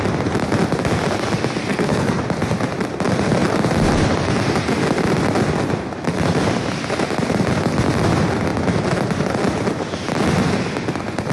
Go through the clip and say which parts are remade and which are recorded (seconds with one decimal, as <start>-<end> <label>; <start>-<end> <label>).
0.0-1.7 recorded; 1.7-2.2 remade; 2.2-11.3 recorded